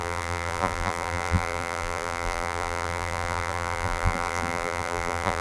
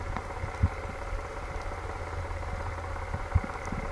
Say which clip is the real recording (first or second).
second